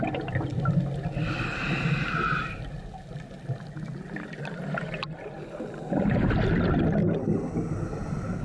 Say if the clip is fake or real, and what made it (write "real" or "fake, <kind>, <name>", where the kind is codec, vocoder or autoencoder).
real